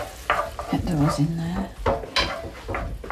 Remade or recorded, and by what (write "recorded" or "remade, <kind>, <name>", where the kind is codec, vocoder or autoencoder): recorded